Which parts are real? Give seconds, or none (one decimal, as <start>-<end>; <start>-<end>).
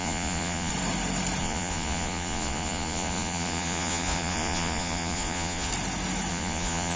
0.7-1.4; 5.7-6.3